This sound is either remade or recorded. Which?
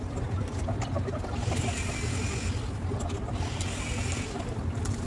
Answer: recorded